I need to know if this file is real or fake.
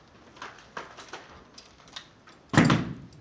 real